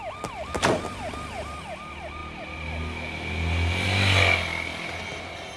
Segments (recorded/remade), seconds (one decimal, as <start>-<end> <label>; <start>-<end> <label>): 0.0-5.6 recorded